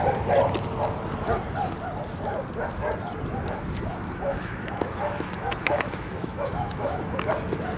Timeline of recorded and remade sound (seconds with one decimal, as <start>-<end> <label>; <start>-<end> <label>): 0.0-3.9 recorded; 3.9-7.3 remade; 7.3-7.8 recorded